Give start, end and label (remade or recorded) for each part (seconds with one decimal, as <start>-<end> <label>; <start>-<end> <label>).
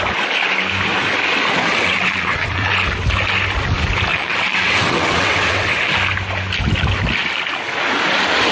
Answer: 0.0-1.6 recorded; 1.6-2.7 remade; 2.7-4.1 recorded; 4.1-5.9 remade; 5.9-8.5 recorded